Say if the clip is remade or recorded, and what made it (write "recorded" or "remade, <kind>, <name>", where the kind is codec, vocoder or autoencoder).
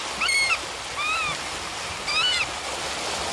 recorded